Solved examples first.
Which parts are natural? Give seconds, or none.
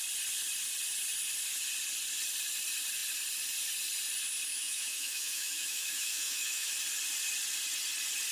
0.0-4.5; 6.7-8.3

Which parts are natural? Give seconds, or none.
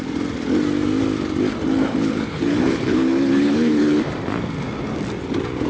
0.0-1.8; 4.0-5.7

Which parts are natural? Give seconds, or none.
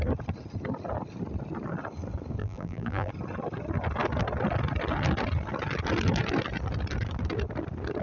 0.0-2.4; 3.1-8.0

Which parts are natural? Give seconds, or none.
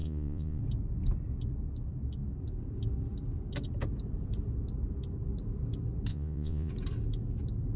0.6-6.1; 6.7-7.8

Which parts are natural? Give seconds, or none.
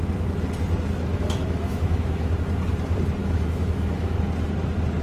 0.0-1.1; 2.3-3.2; 4.2-5.0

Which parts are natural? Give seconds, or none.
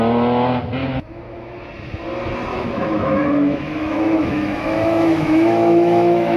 0.0-0.8; 1.5-2.5